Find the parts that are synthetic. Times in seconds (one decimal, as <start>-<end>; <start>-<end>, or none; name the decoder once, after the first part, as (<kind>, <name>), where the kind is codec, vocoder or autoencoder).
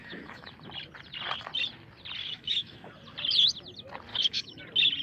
0.0-0.5 (autoencoder, DAC-VAE); 2.2-2.9; 4.1-4.6